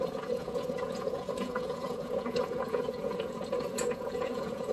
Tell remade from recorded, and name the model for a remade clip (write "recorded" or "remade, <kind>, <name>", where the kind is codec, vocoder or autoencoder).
remade, vocoder, Vocos